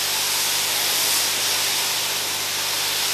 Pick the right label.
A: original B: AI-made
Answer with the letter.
A